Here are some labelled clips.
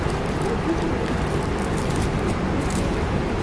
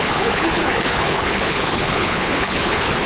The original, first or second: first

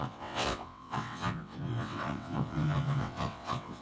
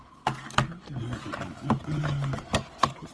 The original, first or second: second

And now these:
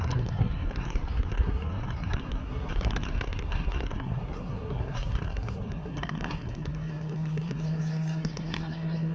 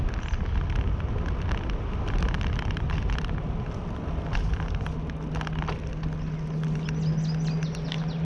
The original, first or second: second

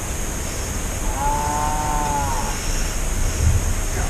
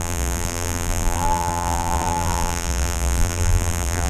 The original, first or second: first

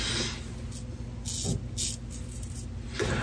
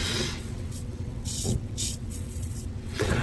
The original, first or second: first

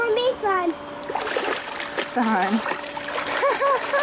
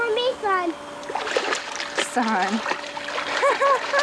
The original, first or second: second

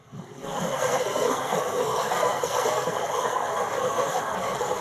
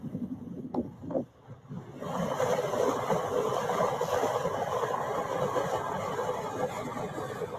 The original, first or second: second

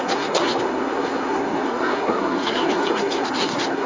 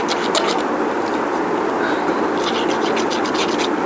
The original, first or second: second